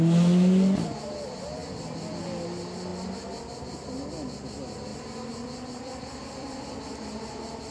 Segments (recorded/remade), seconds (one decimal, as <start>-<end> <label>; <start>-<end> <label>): 0.0-1.6 recorded; 1.6-2.1 remade; 2.1-4.9 recorded; 4.9-6.6 remade; 6.6-7.7 recorded